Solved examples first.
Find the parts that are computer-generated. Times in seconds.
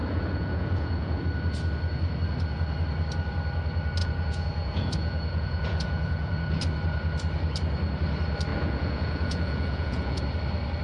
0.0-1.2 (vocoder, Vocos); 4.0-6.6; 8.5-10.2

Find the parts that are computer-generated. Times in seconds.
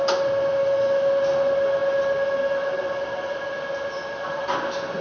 0.6-1.1 (autoencoder, DAC-VAE)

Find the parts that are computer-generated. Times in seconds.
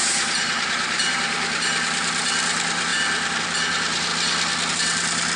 0.0-4.1 (vocoder, BigVGAN v2); 4.7-5.4